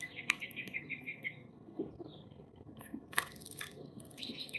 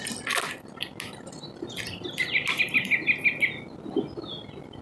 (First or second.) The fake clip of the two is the first